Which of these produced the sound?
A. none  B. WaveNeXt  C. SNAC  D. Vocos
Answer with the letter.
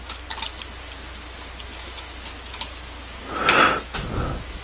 A